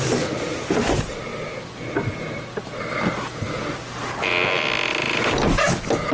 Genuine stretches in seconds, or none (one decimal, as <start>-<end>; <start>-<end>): 0.0-6.1